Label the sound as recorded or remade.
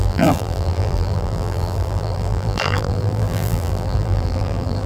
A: remade